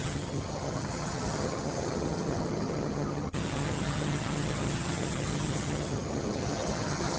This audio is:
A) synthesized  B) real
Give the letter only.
A